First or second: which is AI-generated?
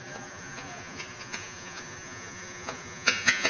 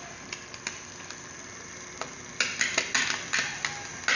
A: first